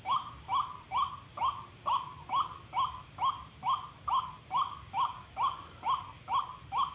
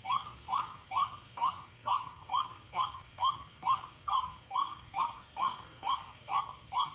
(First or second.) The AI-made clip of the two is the second